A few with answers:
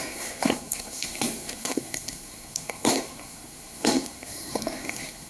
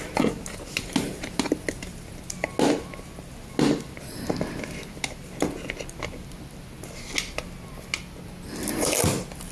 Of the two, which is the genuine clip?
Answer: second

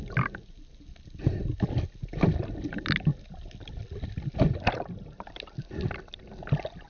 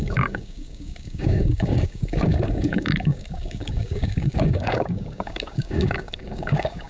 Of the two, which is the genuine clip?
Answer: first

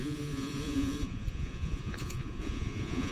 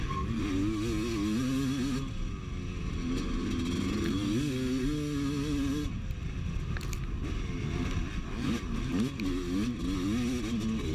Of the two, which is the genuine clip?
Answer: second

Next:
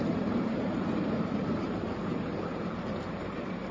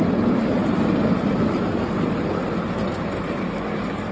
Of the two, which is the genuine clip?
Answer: second